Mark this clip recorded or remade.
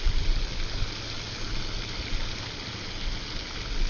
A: recorded